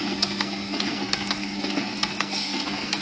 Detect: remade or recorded remade